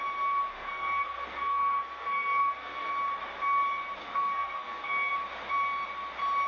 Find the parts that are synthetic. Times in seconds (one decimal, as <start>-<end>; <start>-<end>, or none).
0.5-2.9; 4.0-5.1